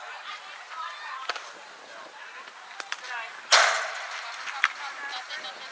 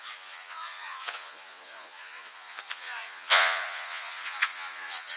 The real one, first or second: first